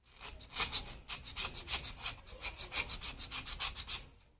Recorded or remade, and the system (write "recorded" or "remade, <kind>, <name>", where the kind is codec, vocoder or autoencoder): recorded